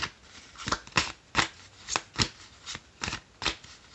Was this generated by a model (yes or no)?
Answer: no